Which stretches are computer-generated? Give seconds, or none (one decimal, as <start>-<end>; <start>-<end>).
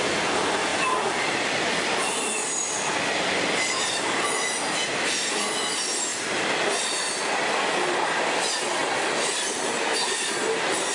0.7-1.2; 8.8-10.2